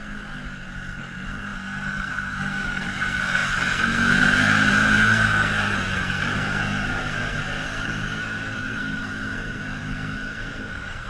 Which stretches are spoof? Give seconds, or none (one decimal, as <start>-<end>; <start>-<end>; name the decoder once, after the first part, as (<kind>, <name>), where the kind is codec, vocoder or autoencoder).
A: 0.0-11.1 (codec, SNAC)